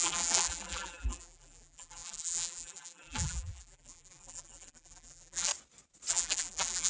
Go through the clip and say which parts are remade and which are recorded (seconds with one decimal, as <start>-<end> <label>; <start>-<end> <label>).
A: 0.0-5.5 remade; 5.5-6.1 recorded; 6.1-6.9 remade